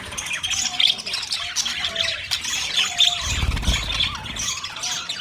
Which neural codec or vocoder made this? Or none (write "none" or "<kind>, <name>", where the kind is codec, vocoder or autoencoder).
none